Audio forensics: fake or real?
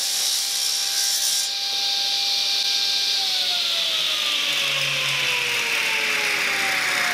real